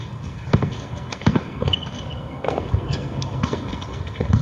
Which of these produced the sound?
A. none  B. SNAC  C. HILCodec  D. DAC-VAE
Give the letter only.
B